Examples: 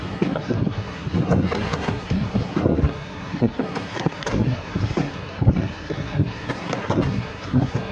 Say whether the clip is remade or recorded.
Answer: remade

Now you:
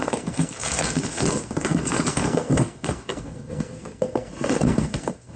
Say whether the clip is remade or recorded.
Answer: remade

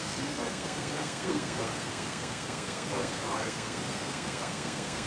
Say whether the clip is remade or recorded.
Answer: remade